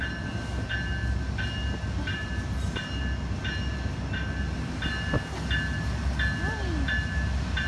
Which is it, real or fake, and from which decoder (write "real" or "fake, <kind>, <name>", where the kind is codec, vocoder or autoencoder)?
real